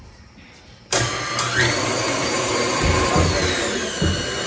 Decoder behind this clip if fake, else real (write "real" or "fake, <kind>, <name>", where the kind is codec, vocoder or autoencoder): real